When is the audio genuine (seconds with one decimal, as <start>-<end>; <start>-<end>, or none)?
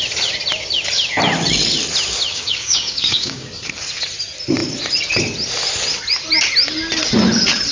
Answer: 0.0-2.3; 3.5-7.7